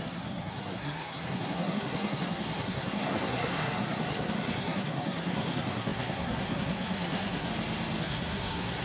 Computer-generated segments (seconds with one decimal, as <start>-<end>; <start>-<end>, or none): 0.0-7.5; 8.0-8.8